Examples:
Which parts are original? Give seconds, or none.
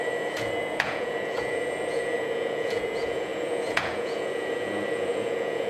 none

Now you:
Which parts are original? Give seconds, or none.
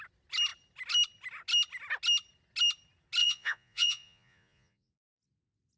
0.0-3.2; 4.9-5.8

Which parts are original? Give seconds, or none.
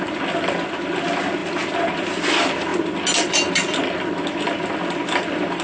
0.0-5.6